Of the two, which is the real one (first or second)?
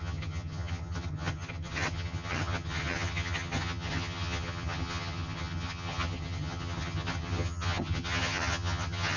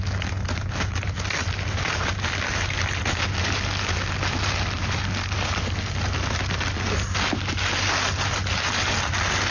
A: second